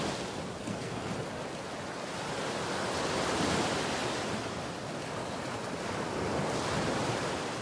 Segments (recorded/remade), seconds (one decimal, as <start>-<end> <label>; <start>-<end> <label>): 0.0-0.6 recorded; 0.6-1.1 remade; 1.1-7.6 recorded